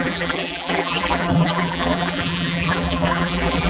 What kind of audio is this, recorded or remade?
remade